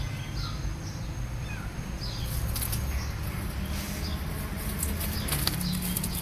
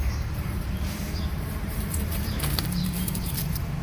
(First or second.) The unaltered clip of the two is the first